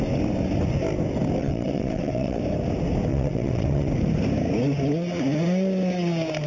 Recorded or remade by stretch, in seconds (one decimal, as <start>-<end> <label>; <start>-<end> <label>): 0.0-1.4 recorded; 1.4-2.4 remade; 2.4-3.1 recorded; 3.1-3.9 remade; 3.9-6.5 recorded